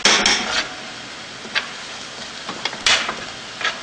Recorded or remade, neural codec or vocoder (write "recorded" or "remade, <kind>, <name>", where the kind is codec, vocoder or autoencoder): recorded